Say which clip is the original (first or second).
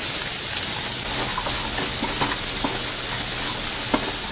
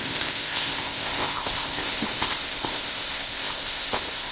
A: first